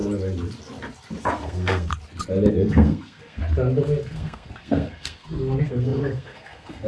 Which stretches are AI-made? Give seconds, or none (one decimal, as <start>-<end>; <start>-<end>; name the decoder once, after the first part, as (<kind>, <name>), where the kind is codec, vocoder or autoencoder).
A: 1.2-1.9 (codec, SNAC); 2.5-3.4; 4.0-6.9